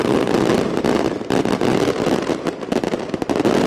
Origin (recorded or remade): recorded